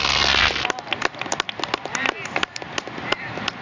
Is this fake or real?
real